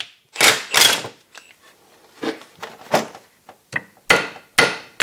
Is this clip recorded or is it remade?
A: recorded